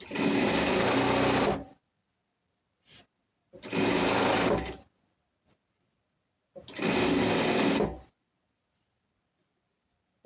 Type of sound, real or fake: real